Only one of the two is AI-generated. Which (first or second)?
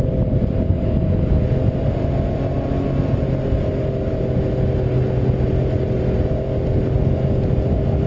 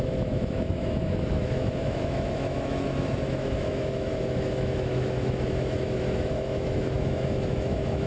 second